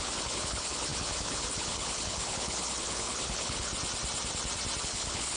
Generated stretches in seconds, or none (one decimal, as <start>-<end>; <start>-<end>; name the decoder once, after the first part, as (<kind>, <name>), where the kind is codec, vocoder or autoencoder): 0.0-3.7 (codec, HILCodec); 4.8-5.4